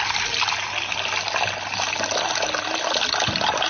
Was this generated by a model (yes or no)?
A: no